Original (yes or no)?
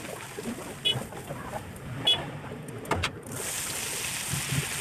yes